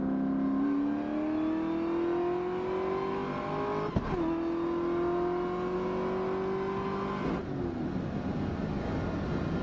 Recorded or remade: recorded